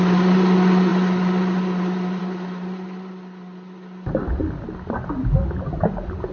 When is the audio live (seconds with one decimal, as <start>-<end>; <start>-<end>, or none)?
0.0-0.9; 2.2-6.3